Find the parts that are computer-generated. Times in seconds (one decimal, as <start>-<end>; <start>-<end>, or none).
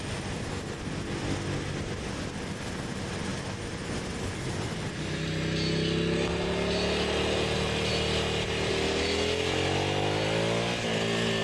none